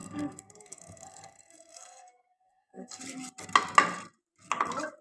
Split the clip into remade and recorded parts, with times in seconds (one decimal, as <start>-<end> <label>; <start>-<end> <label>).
0.0-3.0 remade; 3.0-5.0 recorded